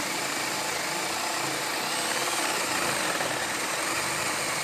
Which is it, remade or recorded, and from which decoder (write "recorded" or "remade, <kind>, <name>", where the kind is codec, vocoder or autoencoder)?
recorded